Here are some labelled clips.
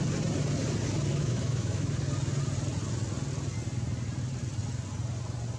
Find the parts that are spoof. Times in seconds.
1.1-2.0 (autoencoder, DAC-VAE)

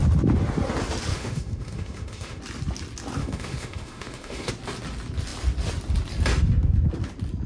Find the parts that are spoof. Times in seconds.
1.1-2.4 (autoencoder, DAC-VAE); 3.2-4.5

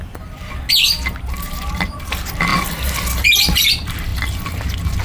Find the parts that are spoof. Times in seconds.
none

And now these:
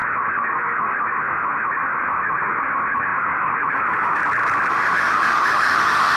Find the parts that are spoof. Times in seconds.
0.0-4.2 (autoencoder, DAC-VAE); 4.7-6.2